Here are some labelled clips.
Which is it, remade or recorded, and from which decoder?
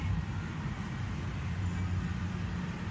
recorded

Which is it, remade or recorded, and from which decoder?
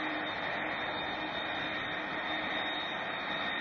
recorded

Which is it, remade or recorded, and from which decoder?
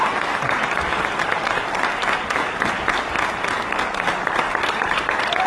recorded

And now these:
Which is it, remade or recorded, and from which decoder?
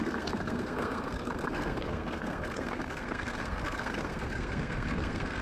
remade, codec, SNAC